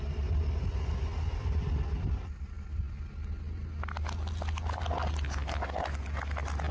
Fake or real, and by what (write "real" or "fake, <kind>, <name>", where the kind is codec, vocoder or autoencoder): real